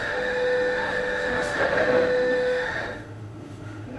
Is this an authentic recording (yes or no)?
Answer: no